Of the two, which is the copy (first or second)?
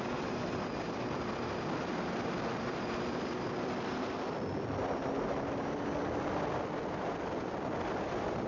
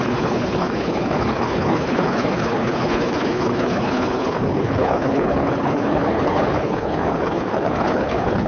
second